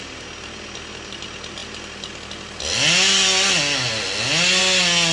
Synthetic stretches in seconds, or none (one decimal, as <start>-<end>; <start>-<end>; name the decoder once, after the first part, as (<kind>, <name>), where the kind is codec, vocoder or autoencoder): none